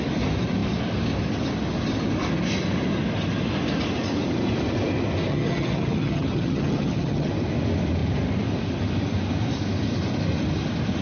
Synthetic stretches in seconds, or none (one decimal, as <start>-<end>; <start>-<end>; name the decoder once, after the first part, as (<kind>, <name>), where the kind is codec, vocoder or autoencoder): 5.3-7.3 (vocoder, HiFi-GAN)